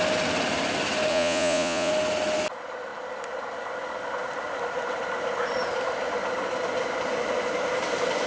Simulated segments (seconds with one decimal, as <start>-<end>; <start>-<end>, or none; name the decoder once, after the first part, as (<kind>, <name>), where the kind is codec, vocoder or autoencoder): 1.1-1.9 (vocoder, Vocos)